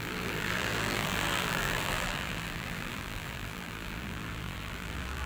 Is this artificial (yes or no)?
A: yes